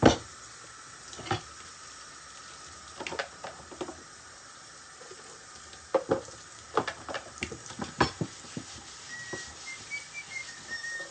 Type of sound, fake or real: real